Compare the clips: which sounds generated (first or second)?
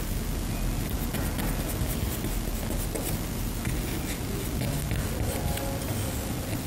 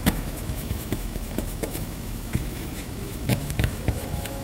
second